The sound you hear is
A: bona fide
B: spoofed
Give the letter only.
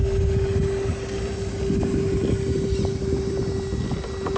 A